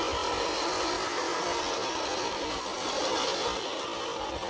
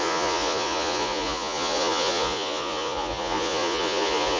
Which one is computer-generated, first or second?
second